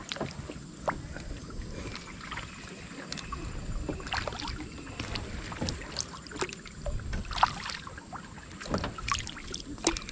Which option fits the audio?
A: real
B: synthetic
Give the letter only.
A